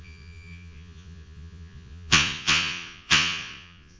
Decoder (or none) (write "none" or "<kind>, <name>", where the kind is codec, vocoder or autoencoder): vocoder, Vocos